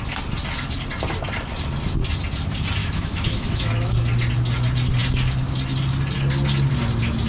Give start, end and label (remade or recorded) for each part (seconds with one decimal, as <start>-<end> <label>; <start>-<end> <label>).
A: 0.0-2.8 recorded; 2.8-3.9 remade; 3.9-7.3 recorded